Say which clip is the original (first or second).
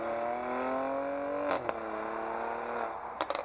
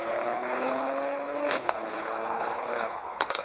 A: first